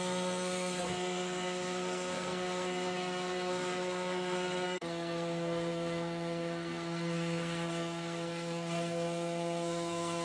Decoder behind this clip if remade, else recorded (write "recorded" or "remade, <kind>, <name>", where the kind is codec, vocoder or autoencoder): remade, codec, SNAC